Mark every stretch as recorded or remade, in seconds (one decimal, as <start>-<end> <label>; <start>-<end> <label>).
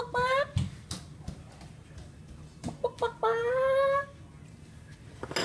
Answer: 0.0-5.4 recorded